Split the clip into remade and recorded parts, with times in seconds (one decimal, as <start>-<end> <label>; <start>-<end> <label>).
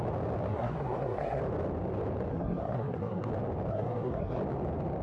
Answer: 0.0-0.5 recorded; 0.5-1.4 remade; 1.4-2.3 recorded; 2.3-3.3 remade; 3.3-3.7 recorded; 3.7-4.4 remade; 4.4-5.0 recorded